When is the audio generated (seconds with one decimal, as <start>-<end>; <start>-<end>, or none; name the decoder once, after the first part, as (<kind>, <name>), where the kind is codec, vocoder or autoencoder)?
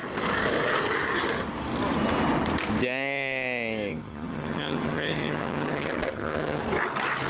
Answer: 3.9-6.6 (vocoder, HiFi-GAN)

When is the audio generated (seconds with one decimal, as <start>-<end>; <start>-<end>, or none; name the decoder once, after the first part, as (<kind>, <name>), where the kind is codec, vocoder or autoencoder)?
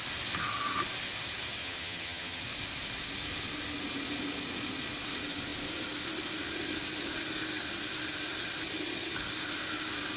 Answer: 1.6-2.4 (vocoder, HiFi-GAN)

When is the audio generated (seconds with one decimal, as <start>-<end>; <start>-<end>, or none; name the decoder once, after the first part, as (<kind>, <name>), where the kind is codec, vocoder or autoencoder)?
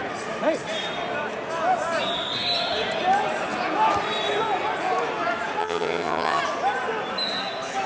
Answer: 5.6-6.4 (vocoder, HiFi-GAN)